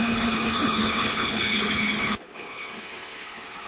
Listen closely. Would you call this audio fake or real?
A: fake